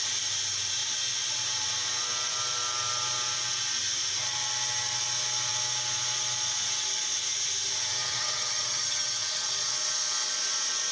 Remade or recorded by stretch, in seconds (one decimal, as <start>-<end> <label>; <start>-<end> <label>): 0.0-8.1 recorded; 8.1-9.2 remade; 9.2-10.9 recorded